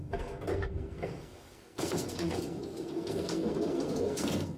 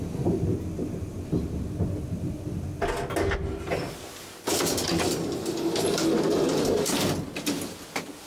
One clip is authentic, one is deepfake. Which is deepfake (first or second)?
first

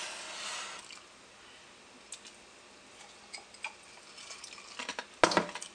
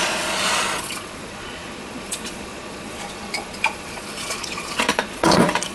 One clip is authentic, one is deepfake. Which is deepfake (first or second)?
second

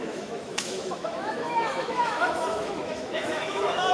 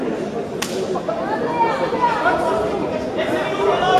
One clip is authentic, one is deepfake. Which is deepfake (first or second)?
first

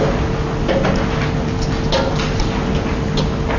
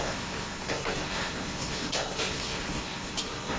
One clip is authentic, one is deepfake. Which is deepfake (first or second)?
second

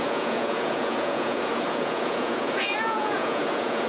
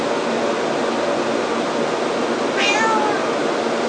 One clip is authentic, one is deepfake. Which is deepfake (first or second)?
first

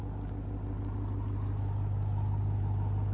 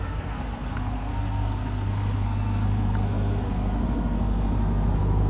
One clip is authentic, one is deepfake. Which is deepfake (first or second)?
second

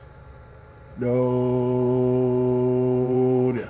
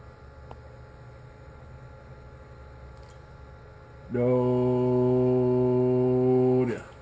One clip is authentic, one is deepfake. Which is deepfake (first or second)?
first